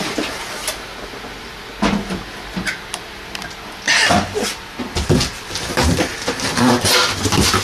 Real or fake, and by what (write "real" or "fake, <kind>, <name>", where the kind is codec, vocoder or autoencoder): real